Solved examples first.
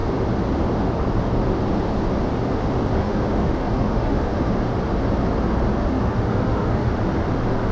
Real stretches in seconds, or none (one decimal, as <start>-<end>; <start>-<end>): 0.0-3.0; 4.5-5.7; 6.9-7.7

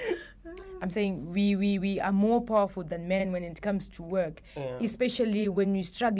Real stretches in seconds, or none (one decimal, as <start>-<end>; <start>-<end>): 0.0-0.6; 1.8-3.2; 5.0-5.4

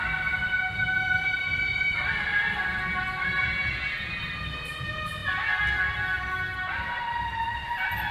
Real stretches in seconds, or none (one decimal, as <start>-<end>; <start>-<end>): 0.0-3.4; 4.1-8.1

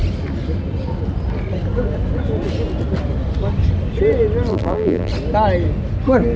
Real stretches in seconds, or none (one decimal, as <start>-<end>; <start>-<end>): 0.0-4.5; 5.1-6.4

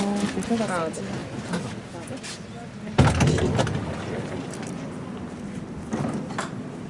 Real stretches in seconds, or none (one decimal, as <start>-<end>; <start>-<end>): 0.0-6.9

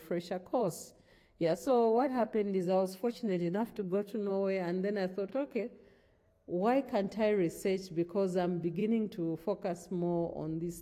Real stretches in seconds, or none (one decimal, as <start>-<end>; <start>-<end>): 0.0-0.6; 4.3-5.3; 6.1-10.8